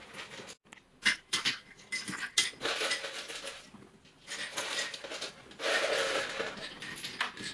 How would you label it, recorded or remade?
recorded